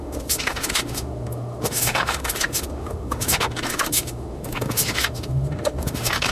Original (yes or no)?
no